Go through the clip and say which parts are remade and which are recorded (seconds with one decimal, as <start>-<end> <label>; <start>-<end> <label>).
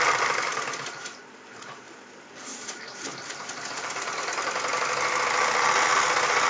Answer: 0.0-6.5 recorded